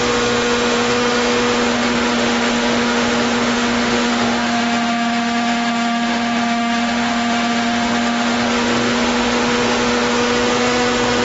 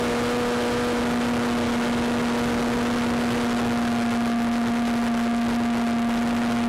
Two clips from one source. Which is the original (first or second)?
second